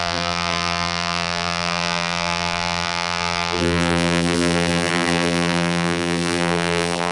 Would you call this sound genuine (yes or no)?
no